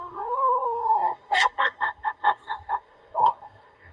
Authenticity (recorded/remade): remade